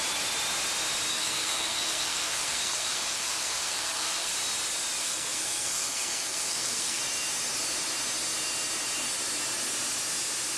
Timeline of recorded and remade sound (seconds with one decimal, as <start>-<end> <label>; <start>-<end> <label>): 0.0-1.1 recorded; 1.1-4.3 remade; 4.3-5.0 recorded; 5.0-7.0 remade; 7.0-10.6 recorded